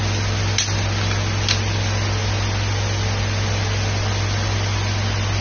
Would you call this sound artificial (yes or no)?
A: no